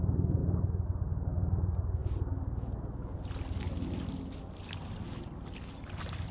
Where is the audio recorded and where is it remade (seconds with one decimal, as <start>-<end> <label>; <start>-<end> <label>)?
0.0-6.3 recorded